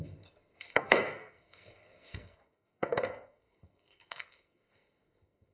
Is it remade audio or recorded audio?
remade